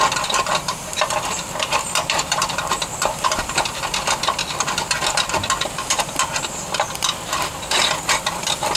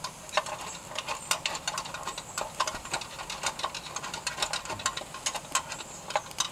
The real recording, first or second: second